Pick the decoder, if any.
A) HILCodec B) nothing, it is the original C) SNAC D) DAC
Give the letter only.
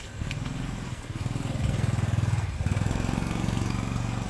C